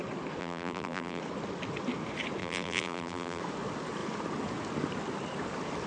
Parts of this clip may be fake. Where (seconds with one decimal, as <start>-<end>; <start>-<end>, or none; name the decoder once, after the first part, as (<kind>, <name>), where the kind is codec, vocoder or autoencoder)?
0.4-1.2 (vocoder, BigVGAN v2); 2.4-3.4